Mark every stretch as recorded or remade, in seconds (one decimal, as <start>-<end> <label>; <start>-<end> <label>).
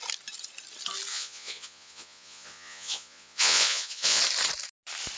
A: 0.0-1.1 recorded; 1.1-4.2 remade; 4.2-5.2 recorded